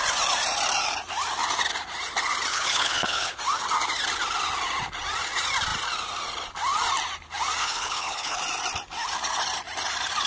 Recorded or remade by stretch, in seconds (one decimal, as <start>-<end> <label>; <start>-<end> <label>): 0.0-2.5 recorded; 2.5-3.4 remade; 3.4-7.6 recorded; 7.6-8.4 remade; 8.4-10.3 recorded